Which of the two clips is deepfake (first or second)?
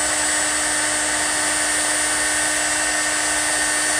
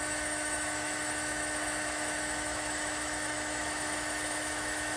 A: second